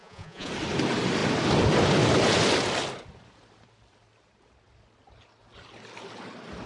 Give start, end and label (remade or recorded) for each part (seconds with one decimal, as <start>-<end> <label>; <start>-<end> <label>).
0.0-0.5 remade; 0.5-6.7 recorded